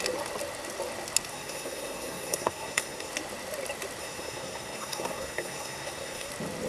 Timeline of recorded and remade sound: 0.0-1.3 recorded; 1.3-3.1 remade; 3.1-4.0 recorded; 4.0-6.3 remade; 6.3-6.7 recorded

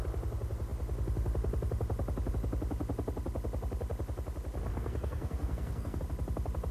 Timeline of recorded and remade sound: 0.0-4.7 recorded; 4.7-6.0 remade; 6.0-6.7 recorded